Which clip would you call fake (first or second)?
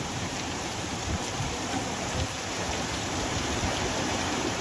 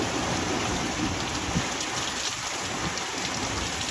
first